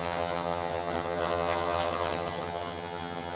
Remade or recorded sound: remade